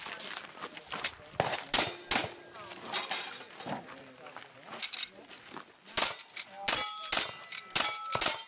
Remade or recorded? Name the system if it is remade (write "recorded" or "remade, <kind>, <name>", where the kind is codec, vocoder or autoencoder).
recorded